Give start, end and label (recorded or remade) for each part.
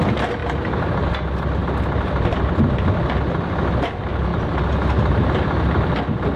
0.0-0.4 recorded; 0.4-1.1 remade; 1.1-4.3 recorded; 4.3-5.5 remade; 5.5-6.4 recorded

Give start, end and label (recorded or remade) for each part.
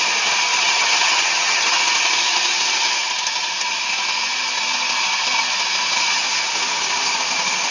0.0-0.5 recorded; 0.5-1.8 remade; 1.8-7.7 recorded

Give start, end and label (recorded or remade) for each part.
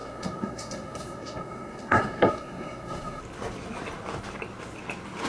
0.0-3.2 remade; 3.2-5.3 recorded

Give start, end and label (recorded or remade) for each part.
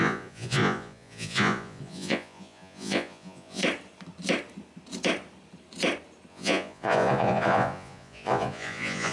0.0-3.6 remade; 3.6-6.3 recorded; 6.3-9.1 remade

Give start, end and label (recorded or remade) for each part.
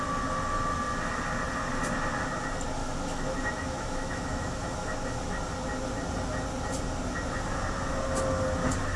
0.0-2.8 recorded; 2.8-5.3 remade; 5.3-9.0 recorded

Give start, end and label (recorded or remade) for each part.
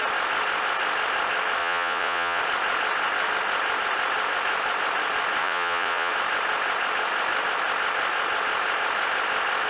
0.0-1.6 recorded; 1.6-2.4 remade; 2.4-5.4 recorded; 5.4-6.1 remade; 6.1-9.7 recorded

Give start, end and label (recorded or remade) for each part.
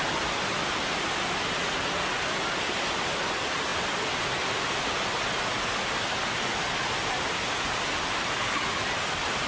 0.0-9.5 recorded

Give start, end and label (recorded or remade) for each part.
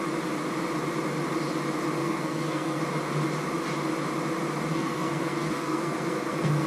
0.0-2.0 recorded; 2.0-2.8 remade; 2.8-4.7 recorded; 4.7-6.7 remade